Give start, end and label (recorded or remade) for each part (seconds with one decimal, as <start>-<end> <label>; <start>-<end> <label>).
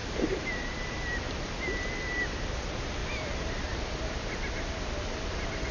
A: 0.0-1.5 remade; 1.5-3.0 recorded; 3.0-4.1 remade; 4.1-5.7 recorded